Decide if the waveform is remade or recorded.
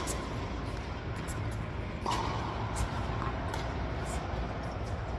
recorded